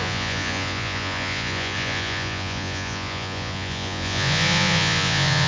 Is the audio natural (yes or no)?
no